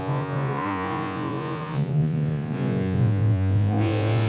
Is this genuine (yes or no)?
no